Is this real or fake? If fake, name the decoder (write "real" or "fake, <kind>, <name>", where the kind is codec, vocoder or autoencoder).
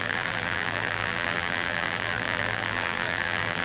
fake, vocoder, BigVGAN v2